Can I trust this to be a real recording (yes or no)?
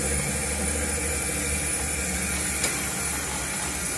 yes